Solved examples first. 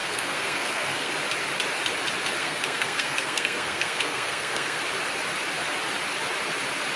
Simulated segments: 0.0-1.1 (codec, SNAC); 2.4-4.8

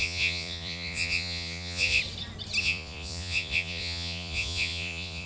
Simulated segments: 0.0-2.0 (vocoder, Vocos); 2.6-5.3

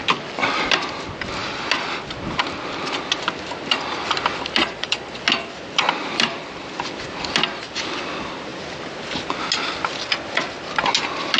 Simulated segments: 4.6-5.2 (vocoder, Vocos)